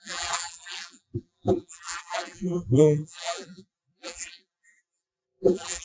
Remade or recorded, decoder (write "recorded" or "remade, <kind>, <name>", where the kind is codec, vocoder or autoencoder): remade, vocoder, BigVGAN v2